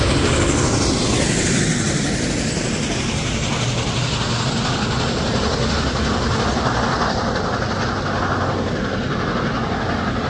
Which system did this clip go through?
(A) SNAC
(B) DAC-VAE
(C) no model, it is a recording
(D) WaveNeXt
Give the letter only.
C